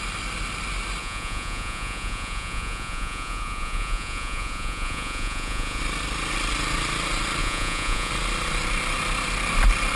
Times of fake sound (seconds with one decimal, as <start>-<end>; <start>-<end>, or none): 1.0-5.8; 7.4-8.1